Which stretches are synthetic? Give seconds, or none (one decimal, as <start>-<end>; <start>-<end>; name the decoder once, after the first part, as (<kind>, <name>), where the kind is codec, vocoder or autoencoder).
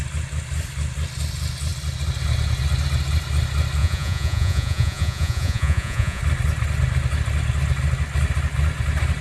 3.8-6.2 (vocoder, Vocos)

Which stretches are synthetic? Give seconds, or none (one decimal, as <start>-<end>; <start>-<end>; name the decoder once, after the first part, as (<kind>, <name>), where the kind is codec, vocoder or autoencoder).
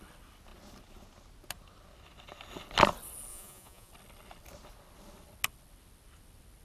3.3-3.9 (vocoder, Vocos)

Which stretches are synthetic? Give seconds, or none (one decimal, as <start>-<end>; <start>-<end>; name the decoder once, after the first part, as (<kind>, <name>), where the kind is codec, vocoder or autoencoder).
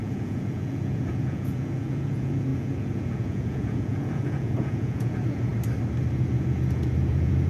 0.0-5.5 (vocoder, Vocos); 6.1-7.5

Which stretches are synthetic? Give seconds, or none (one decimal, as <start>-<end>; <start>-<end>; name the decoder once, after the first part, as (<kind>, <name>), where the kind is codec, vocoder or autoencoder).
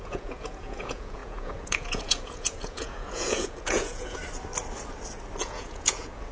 0.0-4.2 (vocoder, Vocos); 5.4-6.3